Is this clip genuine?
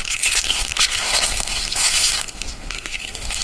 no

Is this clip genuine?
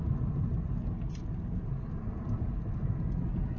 yes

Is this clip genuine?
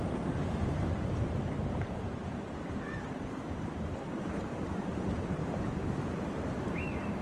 no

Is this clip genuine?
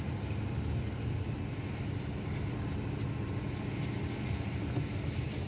yes